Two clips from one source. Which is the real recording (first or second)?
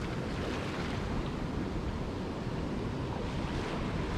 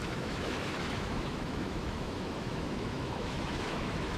first